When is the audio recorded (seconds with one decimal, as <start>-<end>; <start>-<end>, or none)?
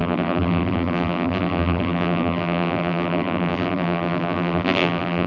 none